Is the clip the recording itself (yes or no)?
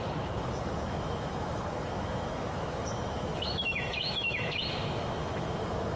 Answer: no